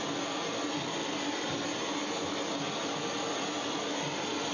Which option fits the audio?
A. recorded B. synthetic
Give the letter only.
A